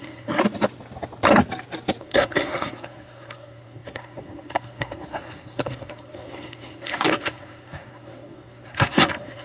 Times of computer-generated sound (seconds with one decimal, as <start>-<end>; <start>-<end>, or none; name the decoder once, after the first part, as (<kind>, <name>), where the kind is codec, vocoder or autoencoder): 0.0-0.4 (codec, SNAC); 2.0-9.4